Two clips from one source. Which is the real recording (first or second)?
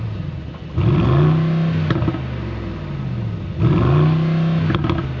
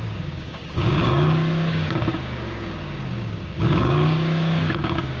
first